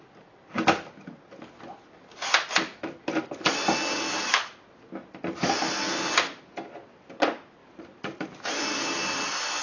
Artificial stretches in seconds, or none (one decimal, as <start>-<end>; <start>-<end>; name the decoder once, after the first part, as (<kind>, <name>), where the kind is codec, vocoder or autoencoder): 7.6-9.2 (vocoder, BigVGAN v2)